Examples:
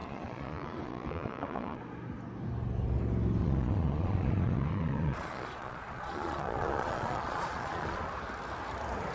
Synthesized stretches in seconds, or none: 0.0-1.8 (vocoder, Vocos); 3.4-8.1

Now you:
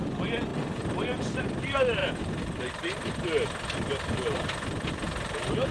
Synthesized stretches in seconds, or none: none